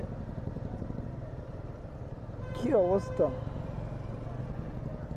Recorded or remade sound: recorded